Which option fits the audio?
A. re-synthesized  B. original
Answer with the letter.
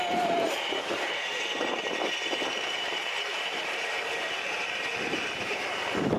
A